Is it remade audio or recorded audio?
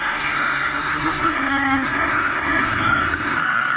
remade